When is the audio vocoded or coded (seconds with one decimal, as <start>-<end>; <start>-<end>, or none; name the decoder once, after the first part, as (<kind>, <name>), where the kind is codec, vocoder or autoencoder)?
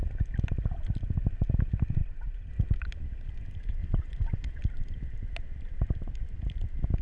2.0-2.5 (vocoder, Vocos); 3.8-4.6